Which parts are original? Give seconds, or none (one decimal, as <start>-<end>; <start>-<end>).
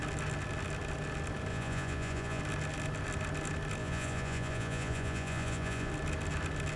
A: 0.0-1.5; 2.4-3.8; 5.9-6.8